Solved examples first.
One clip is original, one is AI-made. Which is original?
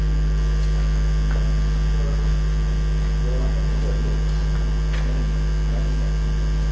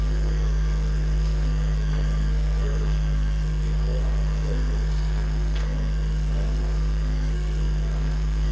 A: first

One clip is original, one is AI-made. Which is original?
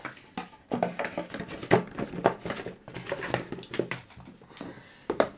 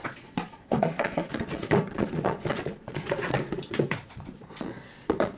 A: first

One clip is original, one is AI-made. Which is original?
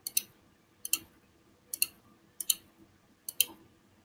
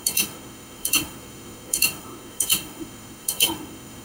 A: first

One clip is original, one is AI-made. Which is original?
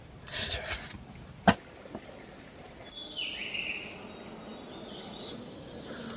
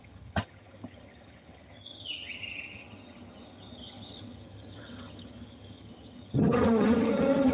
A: first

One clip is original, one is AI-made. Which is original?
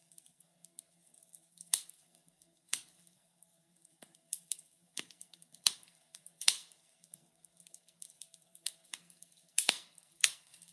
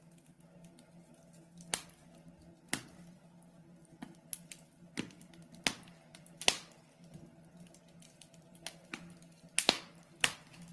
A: second